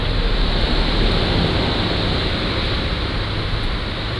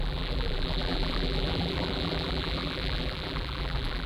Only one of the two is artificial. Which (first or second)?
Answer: second